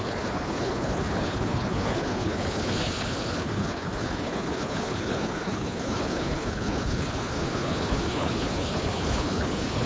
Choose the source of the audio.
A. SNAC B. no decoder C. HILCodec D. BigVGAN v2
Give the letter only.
C